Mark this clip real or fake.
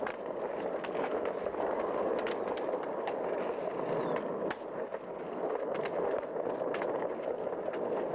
real